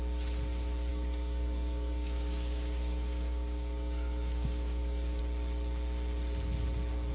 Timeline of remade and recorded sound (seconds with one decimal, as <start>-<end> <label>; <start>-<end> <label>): 0.0-0.9 recorded; 0.9-5.2 remade; 5.2-7.1 recorded